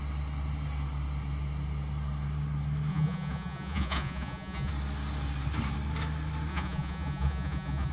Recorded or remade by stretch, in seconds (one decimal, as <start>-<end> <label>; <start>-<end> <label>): 0.0-2.9 recorded; 2.9-4.7 remade; 4.7-6.5 recorded; 6.5-7.9 remade